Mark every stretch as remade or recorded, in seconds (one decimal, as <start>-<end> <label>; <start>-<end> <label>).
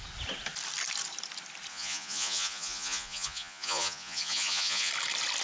0.0-1.7 recorded; 1.7-4.9 remade; 4.9-5.4 recorded